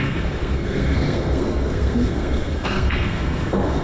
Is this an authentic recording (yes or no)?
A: no